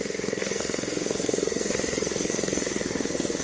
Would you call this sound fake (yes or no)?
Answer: yes